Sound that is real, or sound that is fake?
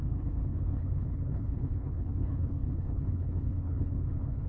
fake